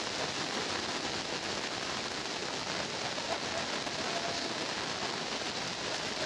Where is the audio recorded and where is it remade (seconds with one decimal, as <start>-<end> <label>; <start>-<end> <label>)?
0.0-6.3 recorded